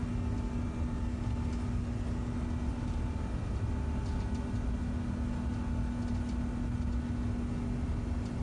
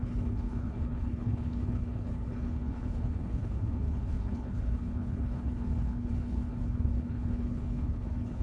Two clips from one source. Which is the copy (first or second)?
second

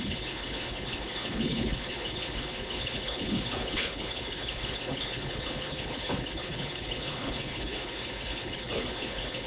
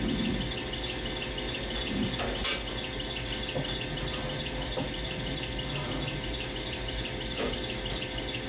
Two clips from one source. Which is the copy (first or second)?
first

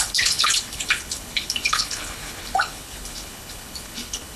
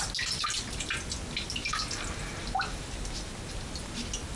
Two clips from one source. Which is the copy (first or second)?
first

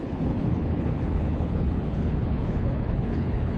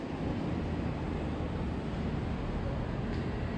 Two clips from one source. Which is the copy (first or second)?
first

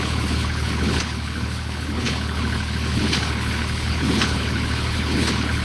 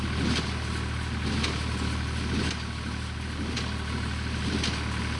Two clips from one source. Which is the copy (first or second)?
first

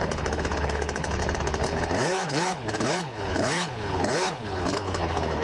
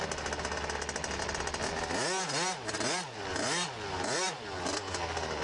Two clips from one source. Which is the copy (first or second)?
first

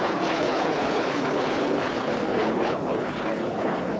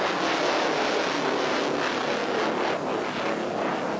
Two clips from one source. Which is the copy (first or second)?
first